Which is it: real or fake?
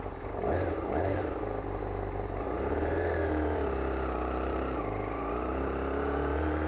fake